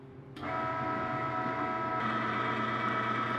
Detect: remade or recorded recorded